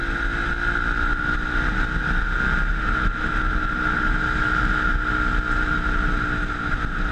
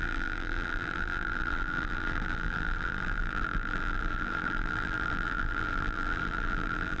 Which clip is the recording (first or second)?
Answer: first